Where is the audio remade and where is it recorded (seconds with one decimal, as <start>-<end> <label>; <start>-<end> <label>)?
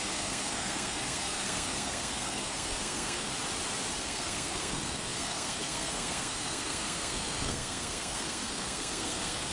0.0-3.3 remade; 3.3-4.0 recorded; 4.0-9.5 remade